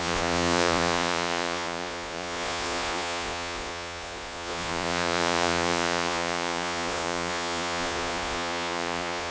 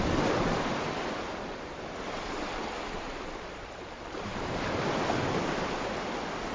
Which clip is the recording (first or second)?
second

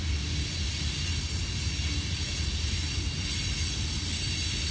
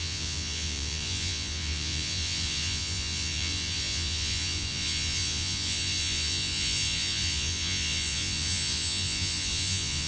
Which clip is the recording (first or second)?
first